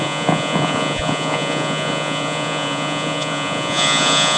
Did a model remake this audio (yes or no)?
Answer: yes